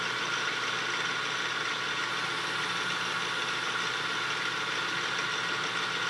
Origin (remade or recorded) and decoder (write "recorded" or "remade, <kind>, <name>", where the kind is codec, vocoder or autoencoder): recorded